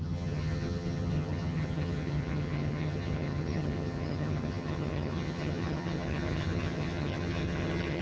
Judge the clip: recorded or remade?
remade